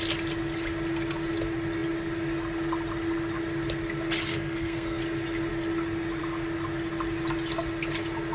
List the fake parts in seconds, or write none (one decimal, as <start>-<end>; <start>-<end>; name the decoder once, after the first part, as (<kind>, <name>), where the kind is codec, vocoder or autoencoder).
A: 4.3-5.0 (codec, SNAC)